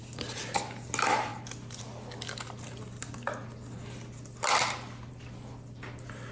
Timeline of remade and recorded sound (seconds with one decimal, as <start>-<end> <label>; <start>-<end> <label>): 0.0-6.3 recorded